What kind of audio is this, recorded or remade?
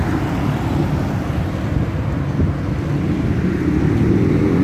recorded